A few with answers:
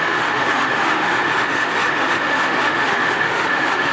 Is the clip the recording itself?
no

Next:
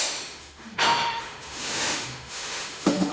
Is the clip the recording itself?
no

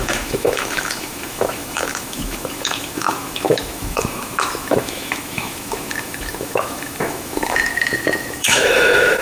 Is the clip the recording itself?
no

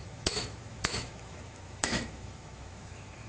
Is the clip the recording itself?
no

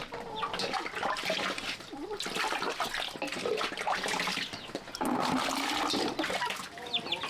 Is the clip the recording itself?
yes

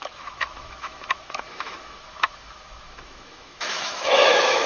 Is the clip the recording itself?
no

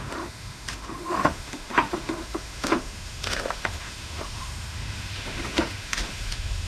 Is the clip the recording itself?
no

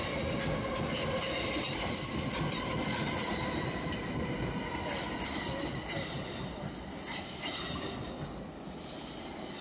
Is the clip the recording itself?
yes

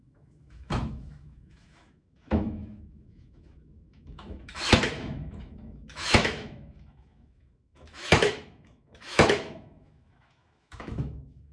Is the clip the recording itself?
no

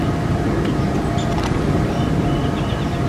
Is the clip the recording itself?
yes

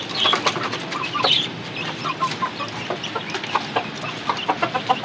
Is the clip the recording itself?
yes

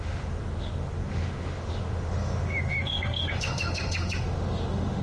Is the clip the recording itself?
no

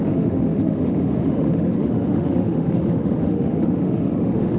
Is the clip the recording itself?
no